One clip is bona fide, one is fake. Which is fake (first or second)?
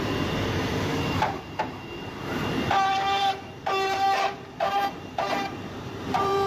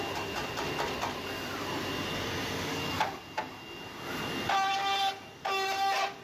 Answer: first